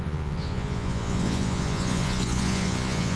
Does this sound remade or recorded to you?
remade